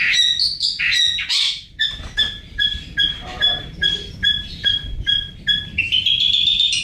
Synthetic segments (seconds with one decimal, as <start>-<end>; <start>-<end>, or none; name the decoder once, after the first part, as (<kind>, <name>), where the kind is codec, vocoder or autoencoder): 1.4-5.1 (vocoder, BigVGAN v2)